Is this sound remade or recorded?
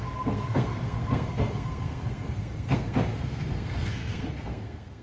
remade